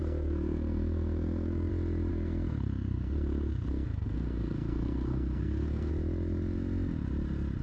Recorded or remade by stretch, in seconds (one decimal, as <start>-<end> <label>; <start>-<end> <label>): 0.0-1.7 remade; 1.7-2.1 recorded; 2.1-5.9 remade; 5.9-7.6 recorded

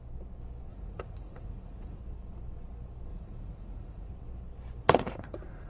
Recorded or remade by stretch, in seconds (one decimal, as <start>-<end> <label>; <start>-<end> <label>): 0.0-0.7 recorded; 0.7-2.0 remade; 2.0-3.1 recorded; 3.1-4.1 remade; 4.1-4.8 recorded; 4.8-5.7 remade

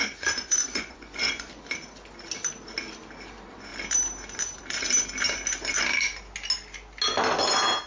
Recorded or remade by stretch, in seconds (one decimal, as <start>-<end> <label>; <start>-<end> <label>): 0.0-1.6 remade; 1.6-7.9 recorded

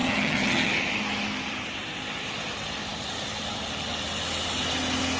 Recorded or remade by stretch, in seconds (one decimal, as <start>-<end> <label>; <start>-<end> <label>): 0.0-0.7 remade; 0.7-5.2 recorded

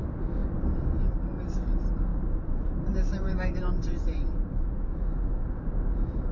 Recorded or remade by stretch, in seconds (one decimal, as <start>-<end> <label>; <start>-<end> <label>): 0.0-2.1 recorded; 2.1-4.7 remade; 4.7-6.3 recorded